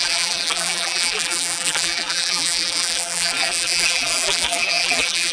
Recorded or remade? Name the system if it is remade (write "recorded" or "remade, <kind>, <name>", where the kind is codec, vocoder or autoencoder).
remade, vocoder, BigVGAN v2